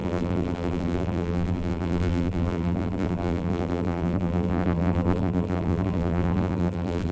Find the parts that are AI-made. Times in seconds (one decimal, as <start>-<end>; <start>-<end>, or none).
0.0-7.1